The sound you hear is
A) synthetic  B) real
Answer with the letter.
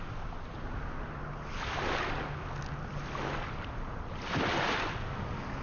B